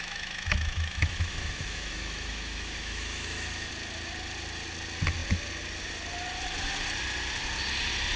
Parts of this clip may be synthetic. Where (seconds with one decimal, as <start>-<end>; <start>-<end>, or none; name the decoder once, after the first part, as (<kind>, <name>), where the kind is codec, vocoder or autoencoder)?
0.0-3.7 (autoencoder, DAC-VAE)